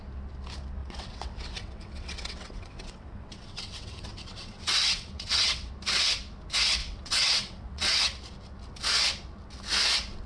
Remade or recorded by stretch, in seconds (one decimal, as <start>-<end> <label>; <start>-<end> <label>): 0.0-0.8 recorded; 0.8-5.7 remade; 5.7-6.8 recorded; 6.8-8.0 remade; 8.0-10.3 recorded